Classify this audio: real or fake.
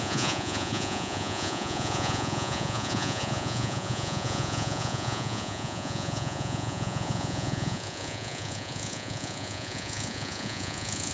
fake